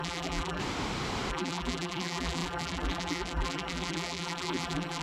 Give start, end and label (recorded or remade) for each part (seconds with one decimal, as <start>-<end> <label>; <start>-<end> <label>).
0.0-0.6 remade; 0.6-1.3 recorded; 1.3-5.0 remade